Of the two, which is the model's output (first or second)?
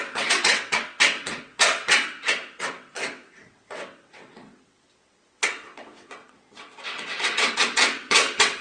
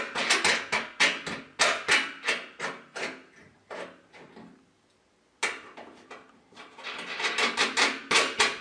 first